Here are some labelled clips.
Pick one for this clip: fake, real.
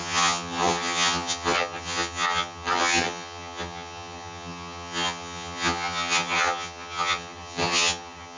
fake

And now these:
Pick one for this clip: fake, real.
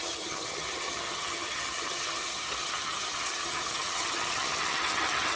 fake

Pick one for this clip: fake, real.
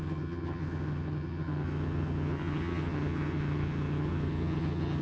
fake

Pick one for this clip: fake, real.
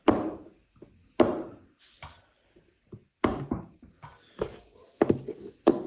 real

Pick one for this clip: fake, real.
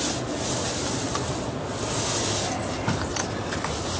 real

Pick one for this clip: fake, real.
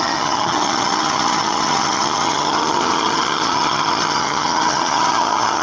fake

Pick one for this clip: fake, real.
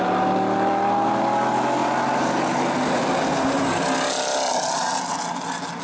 real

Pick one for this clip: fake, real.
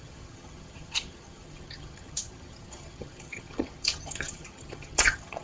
fake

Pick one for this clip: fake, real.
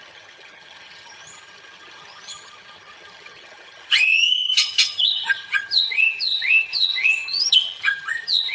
fake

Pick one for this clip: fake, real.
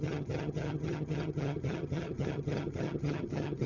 fake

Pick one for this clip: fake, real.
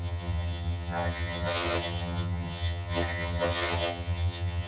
fake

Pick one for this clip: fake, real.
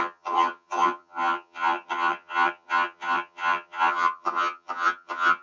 fake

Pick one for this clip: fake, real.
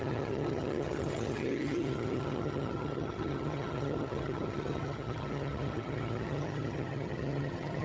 fake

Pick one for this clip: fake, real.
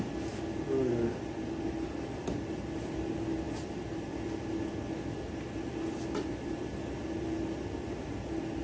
real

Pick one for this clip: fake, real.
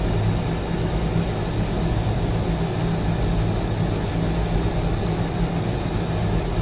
real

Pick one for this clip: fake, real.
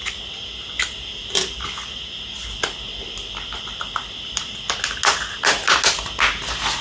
real